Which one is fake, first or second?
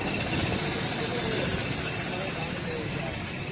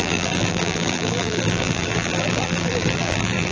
second